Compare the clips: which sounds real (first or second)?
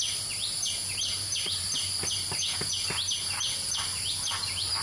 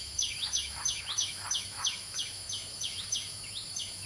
first